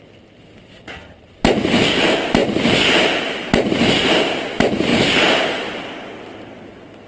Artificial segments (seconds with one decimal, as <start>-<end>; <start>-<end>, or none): none